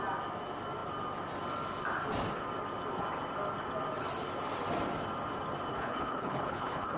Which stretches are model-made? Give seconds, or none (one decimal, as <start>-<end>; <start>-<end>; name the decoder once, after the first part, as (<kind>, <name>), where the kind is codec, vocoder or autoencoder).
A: 5.7-7.0 (codec, HILCodec)